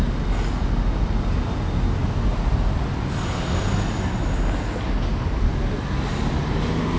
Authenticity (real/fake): real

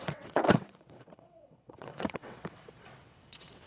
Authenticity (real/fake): fake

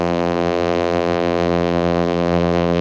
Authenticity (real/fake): fake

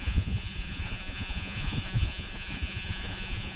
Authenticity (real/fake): fake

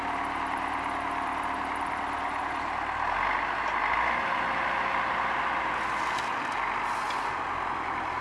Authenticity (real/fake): real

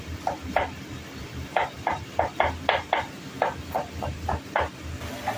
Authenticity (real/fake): fake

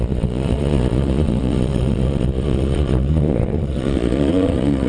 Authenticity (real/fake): fake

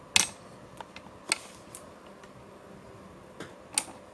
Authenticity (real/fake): real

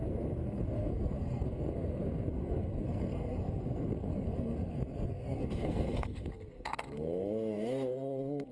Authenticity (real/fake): fake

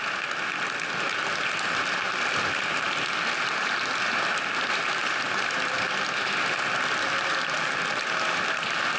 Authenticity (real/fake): real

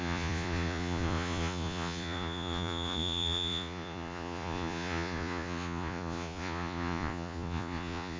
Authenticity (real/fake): fake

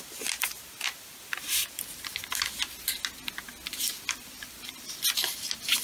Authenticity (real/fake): real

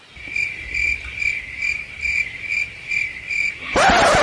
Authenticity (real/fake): real